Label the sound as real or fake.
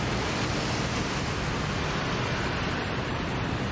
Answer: real